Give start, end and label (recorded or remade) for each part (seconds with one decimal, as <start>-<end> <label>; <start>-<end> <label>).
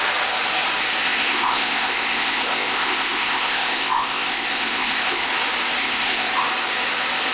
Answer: 0.0-1.0 recorded; 1.0-5.3 remade; 5.3-5.8 recorded; 5.8-6.3 remade; 6.3-7.3 recorded